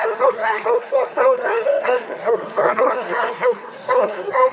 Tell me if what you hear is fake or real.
fake